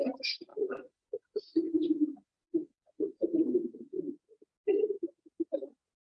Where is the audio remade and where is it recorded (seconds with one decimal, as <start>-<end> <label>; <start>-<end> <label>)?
0.0-0.5 recorded; 0.5-4.0 remade; 4.0-6.1 recorded